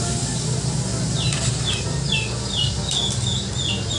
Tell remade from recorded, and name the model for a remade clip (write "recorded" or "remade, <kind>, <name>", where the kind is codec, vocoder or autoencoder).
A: recorded